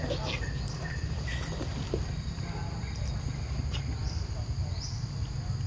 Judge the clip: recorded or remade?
recorded